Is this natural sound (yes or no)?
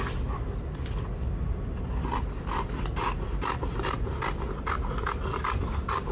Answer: yes